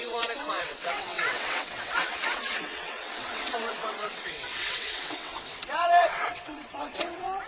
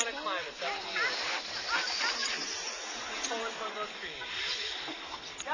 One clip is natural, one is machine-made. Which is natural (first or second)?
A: second